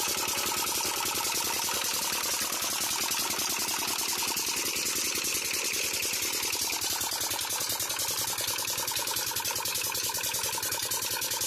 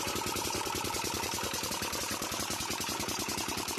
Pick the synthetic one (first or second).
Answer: second